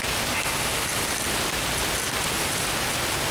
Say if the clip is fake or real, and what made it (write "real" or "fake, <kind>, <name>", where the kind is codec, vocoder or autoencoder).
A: real